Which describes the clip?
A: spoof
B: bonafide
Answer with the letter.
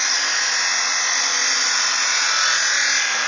B